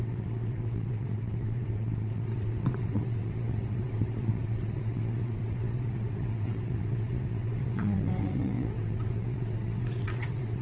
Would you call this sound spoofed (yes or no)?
yes